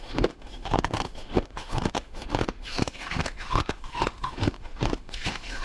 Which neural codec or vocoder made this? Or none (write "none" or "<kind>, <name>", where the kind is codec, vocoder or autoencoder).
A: autoencoder, DAC-VAE